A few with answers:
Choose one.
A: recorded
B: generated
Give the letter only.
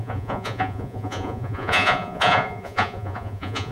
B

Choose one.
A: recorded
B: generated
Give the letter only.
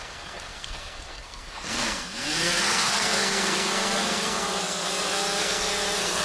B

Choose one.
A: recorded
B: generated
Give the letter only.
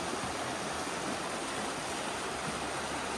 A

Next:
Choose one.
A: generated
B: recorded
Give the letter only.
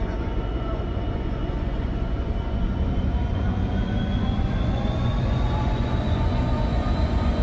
A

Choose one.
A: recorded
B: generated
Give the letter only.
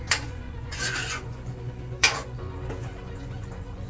B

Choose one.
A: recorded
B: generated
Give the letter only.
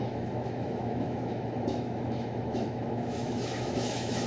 B